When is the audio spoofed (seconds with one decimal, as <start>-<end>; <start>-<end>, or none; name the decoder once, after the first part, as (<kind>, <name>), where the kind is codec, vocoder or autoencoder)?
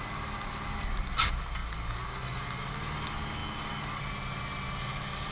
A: none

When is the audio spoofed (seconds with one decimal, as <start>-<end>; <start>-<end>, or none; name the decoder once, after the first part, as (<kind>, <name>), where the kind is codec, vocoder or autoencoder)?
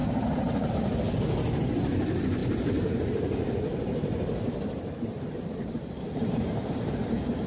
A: 0.0-0.7 (vocoder, BigVGAN v2); 2.4-6.9